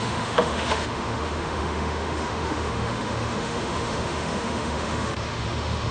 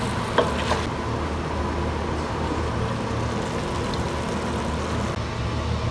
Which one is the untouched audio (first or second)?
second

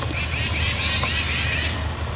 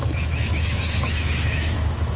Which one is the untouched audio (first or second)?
first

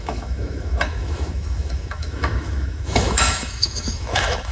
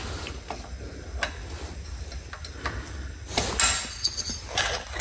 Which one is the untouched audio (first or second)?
second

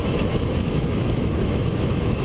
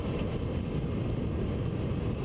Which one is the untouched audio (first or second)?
second